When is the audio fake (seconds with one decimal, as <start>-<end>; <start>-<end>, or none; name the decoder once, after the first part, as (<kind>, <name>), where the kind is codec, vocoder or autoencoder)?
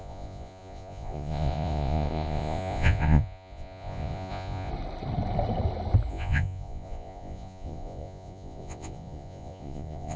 0.0-4.7 (vocoder, Vocos); 6.1-10.2